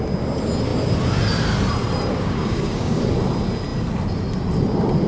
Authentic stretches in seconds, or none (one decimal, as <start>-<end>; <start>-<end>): 0.0-2.1; 3.0-5.1